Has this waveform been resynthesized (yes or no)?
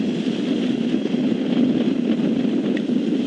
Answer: no